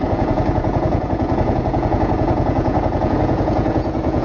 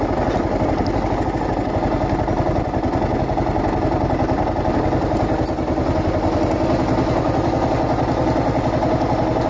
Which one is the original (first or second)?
second